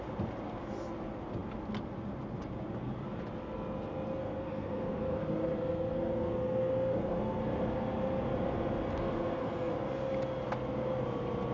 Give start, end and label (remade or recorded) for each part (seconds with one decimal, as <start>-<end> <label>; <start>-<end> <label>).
0.0-4.2 recorded; 4.2-7.4 remade; 7.4-8.9 recorded; 8.9-9.7 remade; 9.7-11.5 recorded